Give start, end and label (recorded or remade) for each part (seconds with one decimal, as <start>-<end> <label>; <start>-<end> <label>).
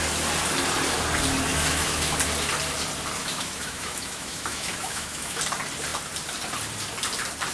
0.0-1.5 recorded; 1.5-2.2 remade; 2.2-3.2 recorded; 3.2-5.4 remade; 5.4-7.5 recorded